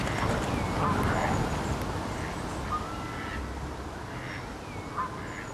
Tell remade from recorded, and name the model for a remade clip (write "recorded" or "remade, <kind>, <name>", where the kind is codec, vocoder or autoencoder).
recorded